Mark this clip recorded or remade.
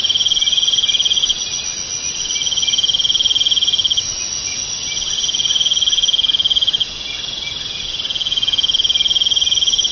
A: recorded